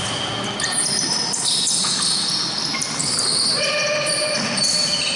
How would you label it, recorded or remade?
recorded